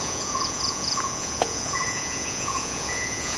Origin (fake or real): fake